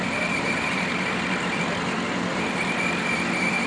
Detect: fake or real fake